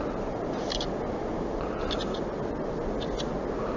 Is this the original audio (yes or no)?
yes